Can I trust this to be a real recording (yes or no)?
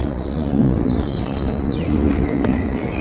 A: no